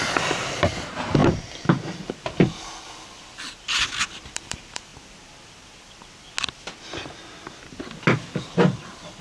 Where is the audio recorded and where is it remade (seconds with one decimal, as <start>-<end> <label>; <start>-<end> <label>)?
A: 0.0-4.9 remade; 4.9-7.9 recorded; 7.9-9.2 remade

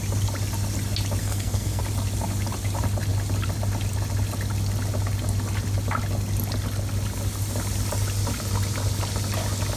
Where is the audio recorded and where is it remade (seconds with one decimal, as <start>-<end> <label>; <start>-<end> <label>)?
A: 0.0-1.2 recorded; 1.2-1.8 remade; 1.8-9.8 recorded